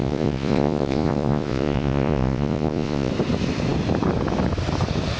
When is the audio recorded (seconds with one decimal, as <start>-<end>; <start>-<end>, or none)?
3.1-5.2